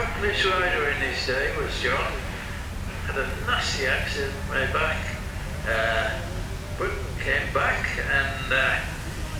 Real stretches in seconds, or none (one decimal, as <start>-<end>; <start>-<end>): 0.0-9.4